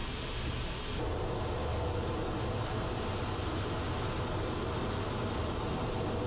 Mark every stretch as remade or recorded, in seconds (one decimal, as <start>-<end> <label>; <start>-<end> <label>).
0.0-6.3 recorded

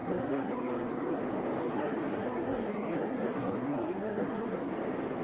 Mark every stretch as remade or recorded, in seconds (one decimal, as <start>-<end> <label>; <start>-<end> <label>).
0.0-1.2 remade; 1.2-1.6 recorded; 1.6-4.7 remade; 4.7-5.2 recorded

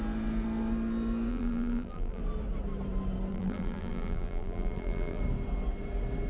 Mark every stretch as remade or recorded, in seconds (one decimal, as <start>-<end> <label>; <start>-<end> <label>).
0.0-1.3 recorded; 1.3-2.2 remade; 2.2-3.3 recorded; 3.3-5.2 remade; 5.2-6.3 recorded

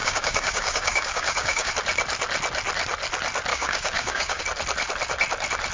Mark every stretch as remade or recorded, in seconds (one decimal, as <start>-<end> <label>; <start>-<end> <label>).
0.0-1.7 remade; 1.7-3.5 recorded; 3.5-4.4 remade; 4.4-5.7 recorded

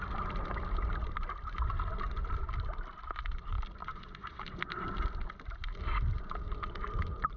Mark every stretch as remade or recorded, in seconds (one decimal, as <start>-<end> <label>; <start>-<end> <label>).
0.0-3.8 recorded; 3.8-4.4 remade; 4.4-7.4 recorded

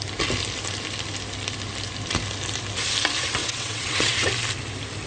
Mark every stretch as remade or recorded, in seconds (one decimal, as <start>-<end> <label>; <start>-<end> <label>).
0.0-3.4 recorded; 3.4-4.3 remade; 4.3-5.1 recorded

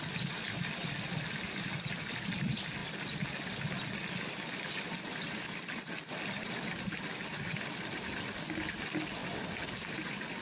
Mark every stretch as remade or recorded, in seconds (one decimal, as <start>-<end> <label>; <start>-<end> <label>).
0.0-10.4 recorded

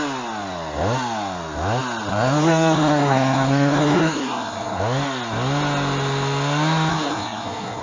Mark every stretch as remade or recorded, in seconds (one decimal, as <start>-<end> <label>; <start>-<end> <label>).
0.0-2.1 recorded; 2.1-4.8 remade; 4.8-6.9 recorded; 6.9-7.8 remade